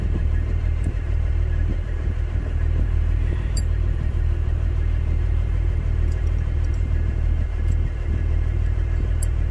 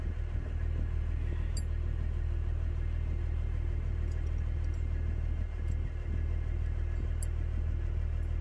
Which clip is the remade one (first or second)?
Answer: first